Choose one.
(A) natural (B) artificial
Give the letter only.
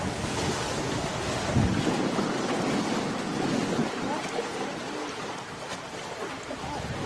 A